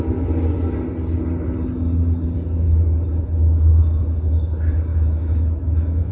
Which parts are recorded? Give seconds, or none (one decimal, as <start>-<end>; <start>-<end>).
0.0-4.9